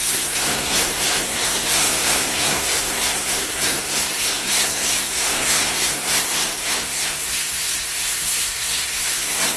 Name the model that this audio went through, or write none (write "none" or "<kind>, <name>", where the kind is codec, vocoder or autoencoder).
codec, SNAC